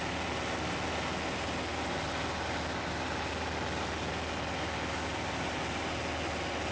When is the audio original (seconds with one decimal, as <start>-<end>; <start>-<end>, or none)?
0.0-6.7